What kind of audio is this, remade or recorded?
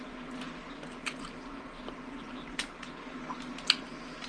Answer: recorded